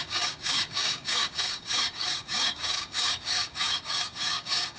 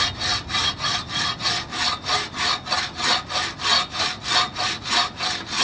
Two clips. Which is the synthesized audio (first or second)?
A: first